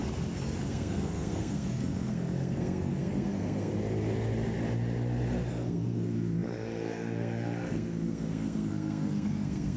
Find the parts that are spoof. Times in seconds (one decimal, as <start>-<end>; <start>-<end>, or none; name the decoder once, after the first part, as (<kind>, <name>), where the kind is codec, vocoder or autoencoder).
0.6-3.7 (codec, SNAC); 5.5-9.8